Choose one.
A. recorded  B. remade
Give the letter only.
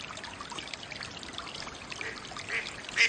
A